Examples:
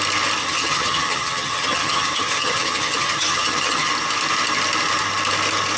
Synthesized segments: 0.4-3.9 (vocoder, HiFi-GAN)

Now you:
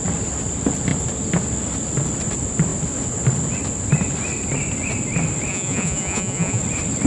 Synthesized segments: 5.5-6.6 (vocoder, Vocos)

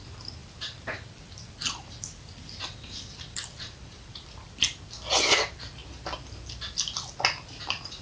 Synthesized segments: 0.0-5.8 (vocoder, BigVGAN v2); 7.6-8.0